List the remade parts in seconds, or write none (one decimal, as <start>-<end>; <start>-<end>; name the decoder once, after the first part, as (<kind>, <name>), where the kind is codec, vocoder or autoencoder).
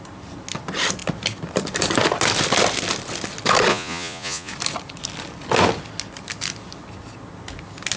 3.7-4.5 (vocoder, Vocos)